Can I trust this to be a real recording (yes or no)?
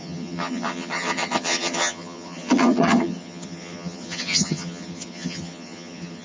no